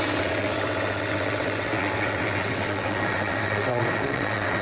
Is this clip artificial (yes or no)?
yes